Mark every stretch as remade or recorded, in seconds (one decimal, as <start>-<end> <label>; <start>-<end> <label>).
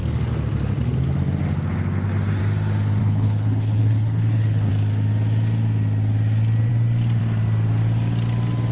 0.0-3.0 recorded; 3.0-4.7 remade; 4.7-8.7 recorded